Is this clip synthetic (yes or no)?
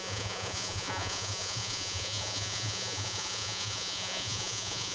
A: yes